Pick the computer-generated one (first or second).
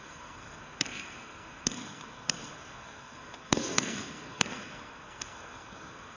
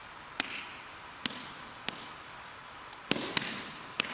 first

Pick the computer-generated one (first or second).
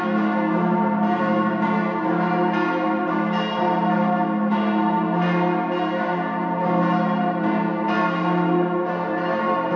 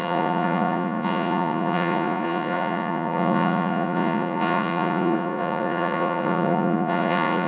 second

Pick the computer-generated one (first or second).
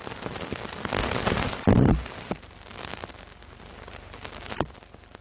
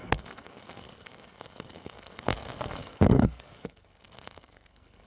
second